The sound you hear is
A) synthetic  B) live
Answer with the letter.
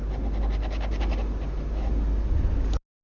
B